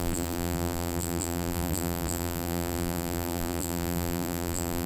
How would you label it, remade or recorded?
remade